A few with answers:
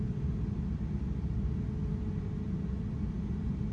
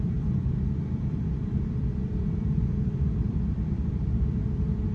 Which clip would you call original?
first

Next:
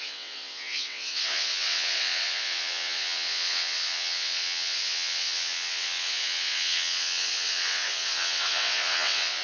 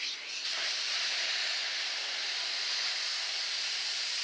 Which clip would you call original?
second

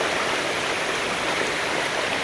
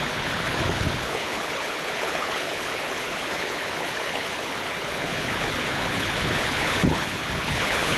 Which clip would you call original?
first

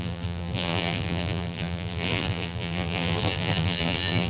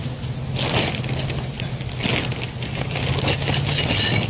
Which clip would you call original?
second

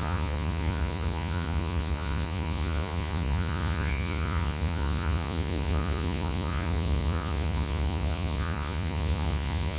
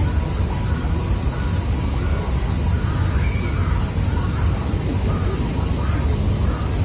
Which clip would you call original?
second